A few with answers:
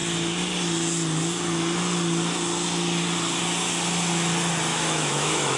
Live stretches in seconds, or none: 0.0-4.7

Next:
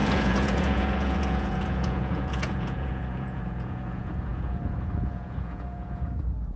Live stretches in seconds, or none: none

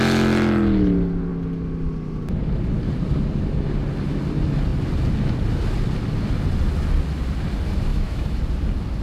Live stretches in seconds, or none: 0.0-7.9; 8.4-9.0

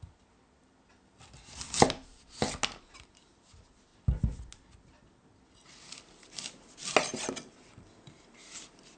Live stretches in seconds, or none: 0.0-9.0

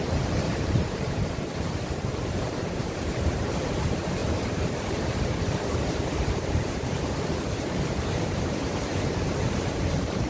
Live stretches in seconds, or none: 4.2-6.0

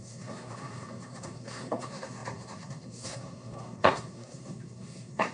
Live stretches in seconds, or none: none

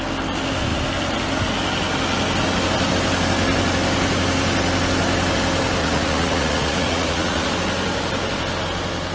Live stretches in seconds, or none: 0.0-5.8; 7.5-9.1